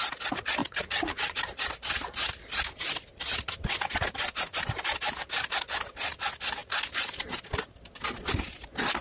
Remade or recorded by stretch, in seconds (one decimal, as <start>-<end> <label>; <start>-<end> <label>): 0.0-0.6 recorded; 0.6-1.4 remade; 1.4-9.0 recorded